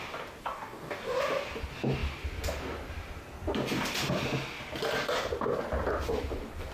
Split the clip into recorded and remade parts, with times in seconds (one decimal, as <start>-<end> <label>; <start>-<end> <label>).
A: 0.0-0.4 recorded; 0.4-1.2 remade; 1.2-6.7 recorded